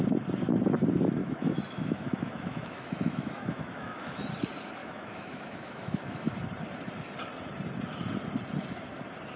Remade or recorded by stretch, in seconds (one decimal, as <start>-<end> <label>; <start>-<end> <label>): 0.0-1.2 recorded; 1.2-4.3 remade; 4.3-4.8 recorded; 4.8-6.4 remade; 6.4-9.4 recorded